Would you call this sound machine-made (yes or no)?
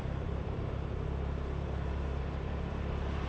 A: yes